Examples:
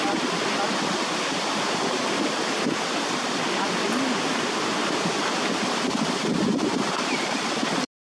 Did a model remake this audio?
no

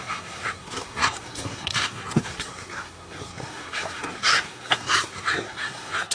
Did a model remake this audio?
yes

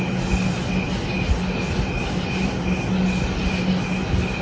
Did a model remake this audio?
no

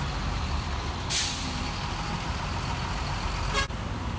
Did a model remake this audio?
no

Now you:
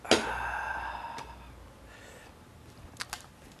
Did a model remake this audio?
no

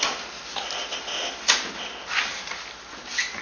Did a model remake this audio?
no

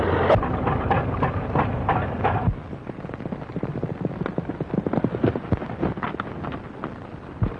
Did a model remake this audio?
no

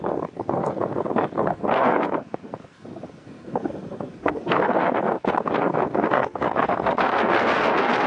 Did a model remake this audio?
yes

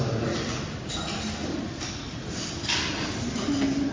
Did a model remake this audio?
no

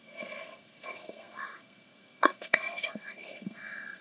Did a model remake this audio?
yes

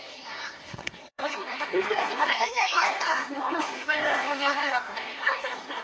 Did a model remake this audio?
yes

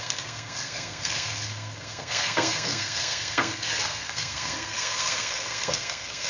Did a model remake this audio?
yes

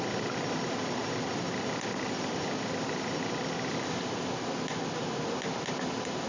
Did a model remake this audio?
no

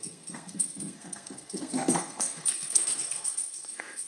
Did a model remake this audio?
yes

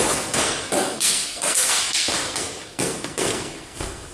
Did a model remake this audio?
yes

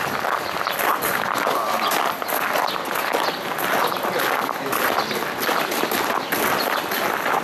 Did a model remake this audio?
no